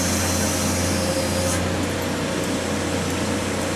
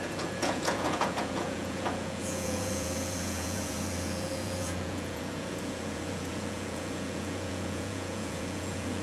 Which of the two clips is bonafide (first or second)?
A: first